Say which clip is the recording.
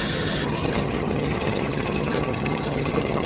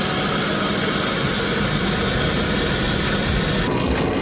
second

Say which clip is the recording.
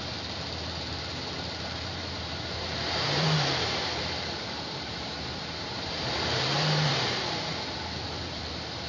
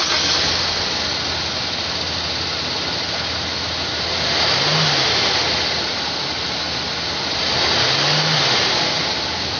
second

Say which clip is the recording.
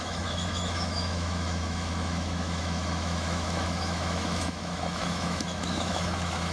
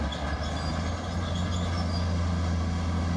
second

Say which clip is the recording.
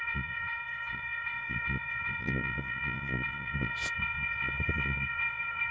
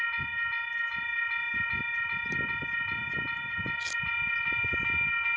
second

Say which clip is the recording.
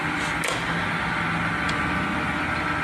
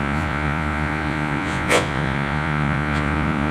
first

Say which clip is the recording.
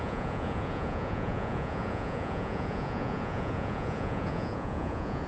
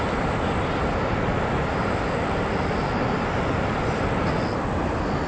second